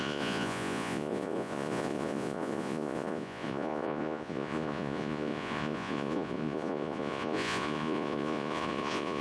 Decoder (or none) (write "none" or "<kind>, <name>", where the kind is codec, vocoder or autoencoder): vocoder, Vocos